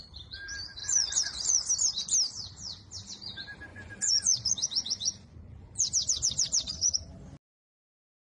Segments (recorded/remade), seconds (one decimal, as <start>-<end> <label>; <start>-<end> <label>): 0.0-0.8 recorded; 0.8-1.7 remade; 1.7-3.7 recorded; 3.7-7.1 remade; 7.1-8.3 recorded